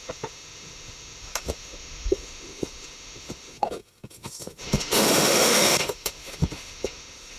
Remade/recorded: remade